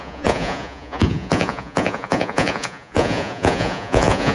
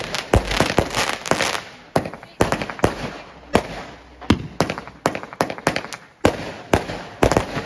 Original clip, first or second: second